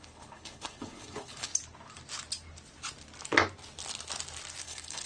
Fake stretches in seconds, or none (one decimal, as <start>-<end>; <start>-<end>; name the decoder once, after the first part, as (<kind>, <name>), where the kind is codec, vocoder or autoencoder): 0.0-1.5 (codec, HILCodec); 4.6-5.1